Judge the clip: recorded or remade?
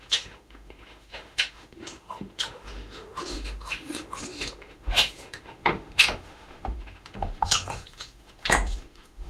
remade